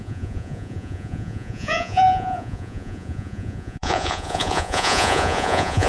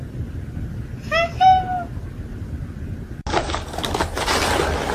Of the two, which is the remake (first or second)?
first